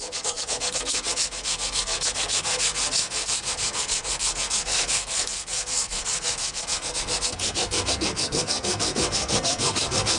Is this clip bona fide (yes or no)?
no